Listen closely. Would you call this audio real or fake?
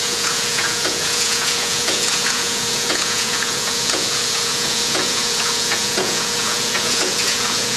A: fake